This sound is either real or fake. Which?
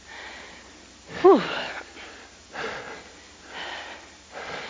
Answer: real